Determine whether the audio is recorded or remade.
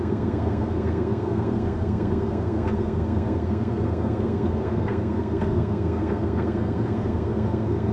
remade